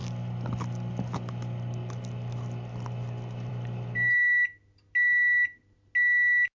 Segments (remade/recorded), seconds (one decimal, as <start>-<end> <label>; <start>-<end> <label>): 0.0-6.5 recorded